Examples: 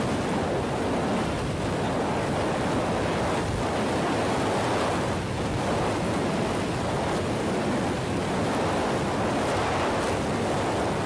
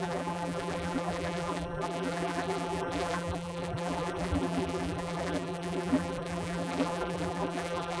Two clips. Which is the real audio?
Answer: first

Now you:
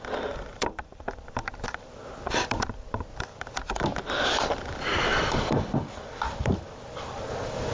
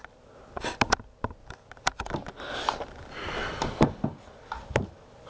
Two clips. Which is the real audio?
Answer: second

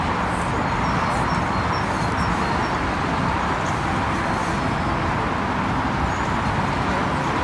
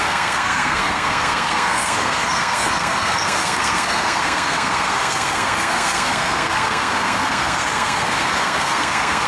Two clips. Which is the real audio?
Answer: first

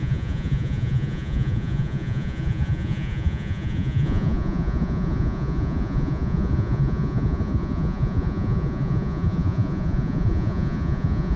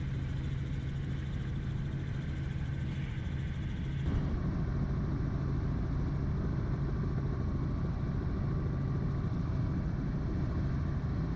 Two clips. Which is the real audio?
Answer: second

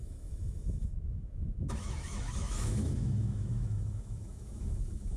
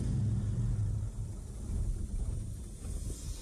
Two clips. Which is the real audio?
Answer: second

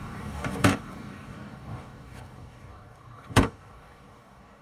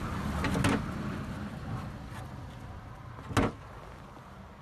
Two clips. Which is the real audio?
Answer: second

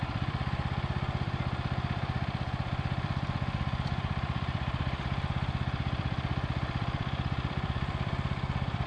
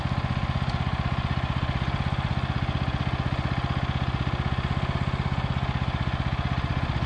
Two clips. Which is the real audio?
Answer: second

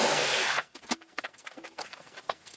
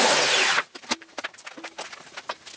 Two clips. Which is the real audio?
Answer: second